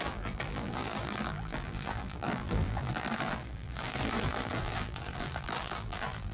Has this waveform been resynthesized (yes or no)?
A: yes